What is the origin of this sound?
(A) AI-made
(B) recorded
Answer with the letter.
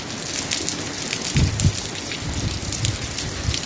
B